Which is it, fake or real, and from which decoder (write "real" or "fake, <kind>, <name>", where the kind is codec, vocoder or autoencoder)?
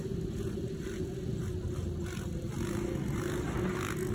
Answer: real